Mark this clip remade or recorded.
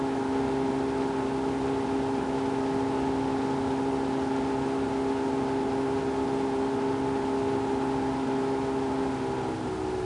recorded